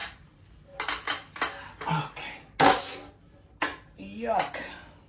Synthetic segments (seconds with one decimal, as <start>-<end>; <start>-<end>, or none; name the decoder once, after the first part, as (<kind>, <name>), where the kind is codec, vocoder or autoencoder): none